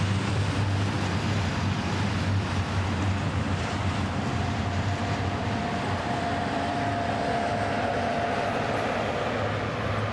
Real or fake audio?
fake